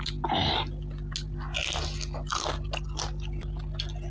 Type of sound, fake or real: real